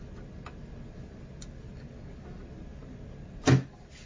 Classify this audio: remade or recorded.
recorded